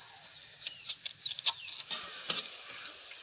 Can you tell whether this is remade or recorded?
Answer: recorded